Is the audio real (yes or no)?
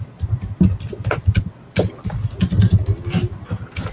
yes